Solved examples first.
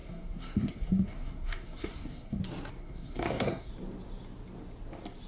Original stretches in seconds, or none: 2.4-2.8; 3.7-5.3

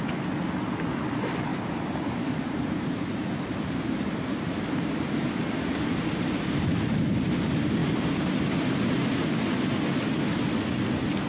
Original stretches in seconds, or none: 0.0-1.5; 5.2-7.8; 8.4-11.3

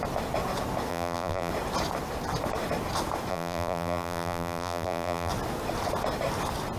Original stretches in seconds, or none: 0.0-0.9; 1.5-3.3; 5.3-6.8

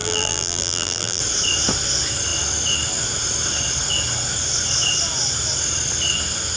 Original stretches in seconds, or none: 1.2-6.6